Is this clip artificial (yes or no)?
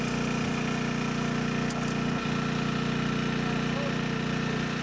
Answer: no